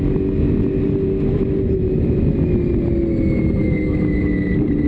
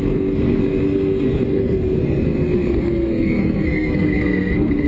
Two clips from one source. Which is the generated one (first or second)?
second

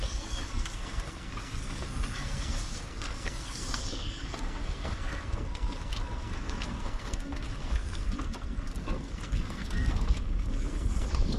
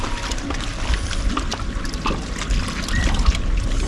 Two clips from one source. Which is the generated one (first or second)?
first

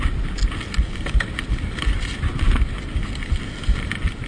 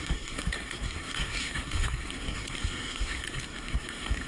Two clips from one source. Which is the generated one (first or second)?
second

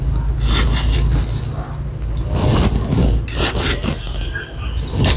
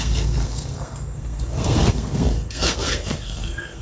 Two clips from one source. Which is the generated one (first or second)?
second